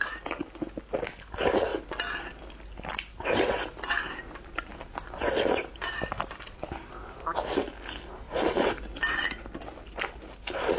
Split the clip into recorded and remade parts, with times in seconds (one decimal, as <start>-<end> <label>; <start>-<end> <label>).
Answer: 0.0-4.7 recorded; 4.7-8.0 remade; 8.0-10.8 recorded

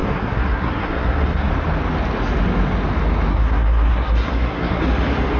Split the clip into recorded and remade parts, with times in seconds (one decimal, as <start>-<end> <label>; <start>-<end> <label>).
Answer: 0.0-1.5 remade; 1.5-3.3 recorded; 3.3-4.8 remade; 4.8-5.4 recorded

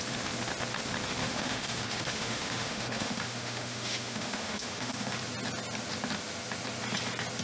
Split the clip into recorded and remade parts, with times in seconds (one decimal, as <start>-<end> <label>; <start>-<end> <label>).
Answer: 0.0-1.2 recorded; 1.2-5.2 remade; 5.2-7.4 recorded

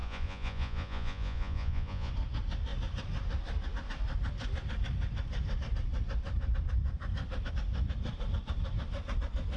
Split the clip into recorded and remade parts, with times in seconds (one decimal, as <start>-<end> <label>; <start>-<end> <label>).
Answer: 0.0-2.1 remade; 2.1-9.6 recorded

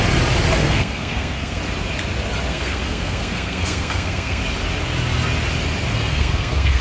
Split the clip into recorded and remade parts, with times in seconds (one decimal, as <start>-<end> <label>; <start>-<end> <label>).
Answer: 0.0-0.6 recorded; 0.6-1.6 remade; 1.6-2.5 recorded; 2.5-4.4 remade; 4.4-6.1 recorded; 6.1-6.8 remade

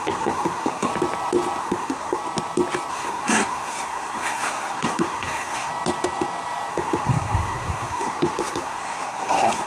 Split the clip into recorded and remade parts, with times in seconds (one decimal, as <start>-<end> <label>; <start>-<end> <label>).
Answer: 0.0-0.9 remade; 0.9-1.6 recorded; 1.6-2.2 remade; 2.2-2.9 recorded; 2.9-5.7 remade; 5.7-6.7 recorded; 6.7-9.7 remade

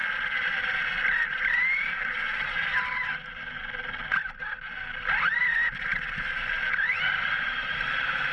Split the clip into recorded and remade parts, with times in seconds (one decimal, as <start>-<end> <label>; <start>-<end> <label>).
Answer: 0.0-8.3 recorded